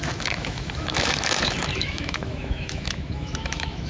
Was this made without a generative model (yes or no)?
no